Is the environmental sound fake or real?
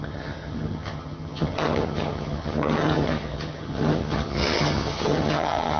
fake